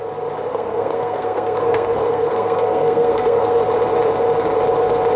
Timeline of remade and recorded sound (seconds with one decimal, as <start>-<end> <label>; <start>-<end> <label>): 0.0-0.5 recorded; 0.5-3.6 remade; 3.6-5.2 recorded